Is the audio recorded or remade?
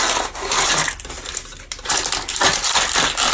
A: recorded